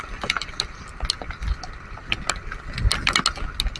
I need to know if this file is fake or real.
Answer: real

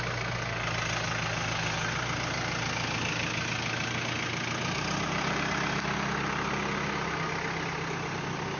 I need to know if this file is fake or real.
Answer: real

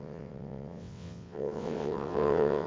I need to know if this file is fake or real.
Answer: fake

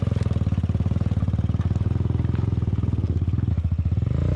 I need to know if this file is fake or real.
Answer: real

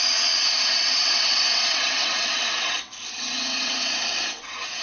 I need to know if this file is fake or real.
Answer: fake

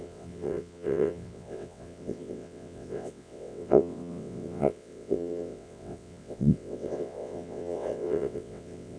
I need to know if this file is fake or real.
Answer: fake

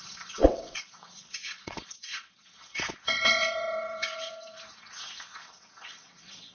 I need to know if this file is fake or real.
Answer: fake